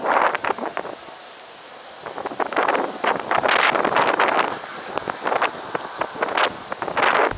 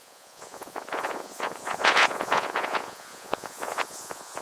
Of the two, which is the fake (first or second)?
second